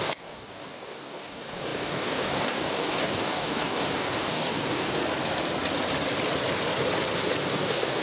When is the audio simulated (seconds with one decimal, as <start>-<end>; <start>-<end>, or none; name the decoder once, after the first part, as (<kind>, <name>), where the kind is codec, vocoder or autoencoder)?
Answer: 0.0-5.0 (codec, DAC); 7.5-8.0